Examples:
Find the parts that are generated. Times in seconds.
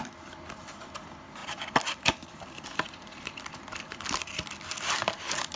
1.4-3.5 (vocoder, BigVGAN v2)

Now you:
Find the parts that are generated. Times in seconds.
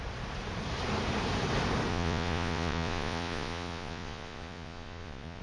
1.9-5.4 (vocoder, Vocos)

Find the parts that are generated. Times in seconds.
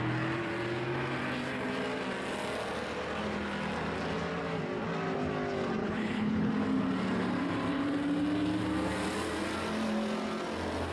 5.8-6.5 (codec, HILCodec)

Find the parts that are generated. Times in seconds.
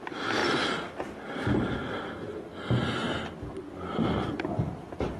none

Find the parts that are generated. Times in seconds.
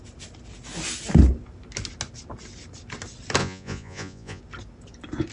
3.4-4.4 (vocoder, Vocos)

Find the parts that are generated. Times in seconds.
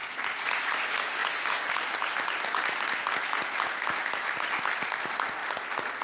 none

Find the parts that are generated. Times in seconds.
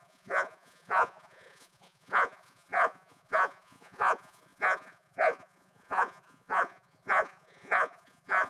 0.0-8.5 (vocoder, Vocos)